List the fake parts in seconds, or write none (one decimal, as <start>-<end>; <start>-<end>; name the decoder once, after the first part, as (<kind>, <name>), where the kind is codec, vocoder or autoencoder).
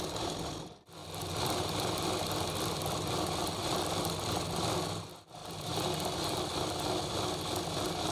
none